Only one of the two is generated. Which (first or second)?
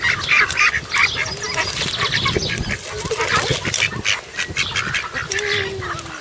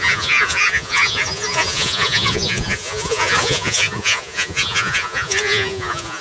second